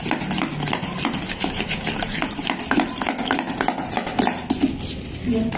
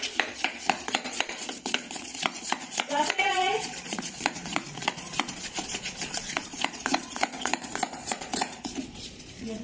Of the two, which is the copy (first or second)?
second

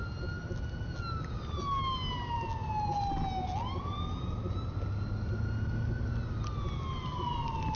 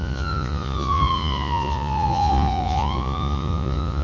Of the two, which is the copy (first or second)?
second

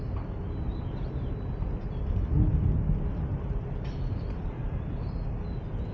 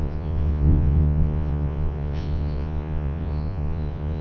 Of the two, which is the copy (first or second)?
second